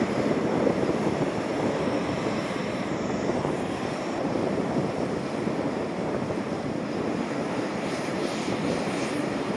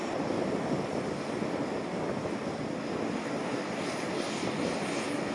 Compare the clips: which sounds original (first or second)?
second